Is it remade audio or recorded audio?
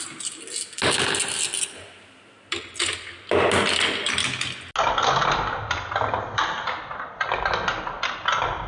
recorded